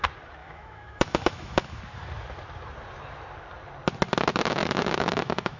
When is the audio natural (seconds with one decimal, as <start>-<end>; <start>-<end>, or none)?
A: 0.0-0.4; 1.8-4.6